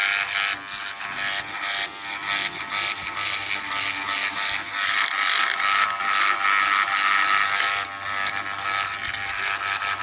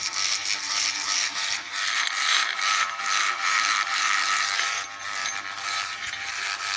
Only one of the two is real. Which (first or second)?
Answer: first